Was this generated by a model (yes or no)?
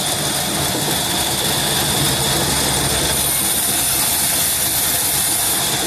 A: no